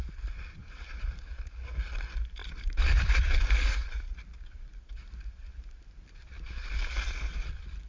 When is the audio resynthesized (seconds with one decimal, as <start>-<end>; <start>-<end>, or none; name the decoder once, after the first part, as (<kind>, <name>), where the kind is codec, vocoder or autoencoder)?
0.6-1.3 (vocoder, BigVGAN v2); 2.4-3.3; 3.8-5.0